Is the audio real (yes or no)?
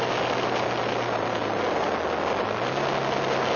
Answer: yes